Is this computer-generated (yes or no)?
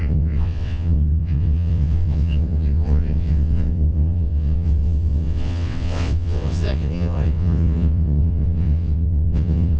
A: yes